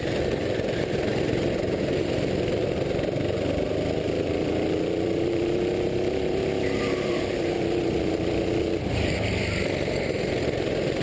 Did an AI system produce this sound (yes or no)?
yes